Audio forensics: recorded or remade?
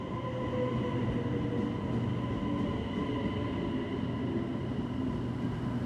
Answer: recorded